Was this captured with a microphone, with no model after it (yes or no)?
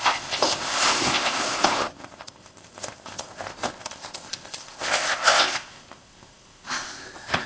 no